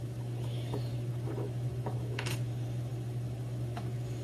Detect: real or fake fake